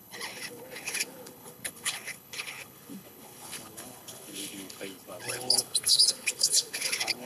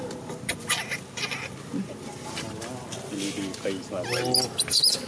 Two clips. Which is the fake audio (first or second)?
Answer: first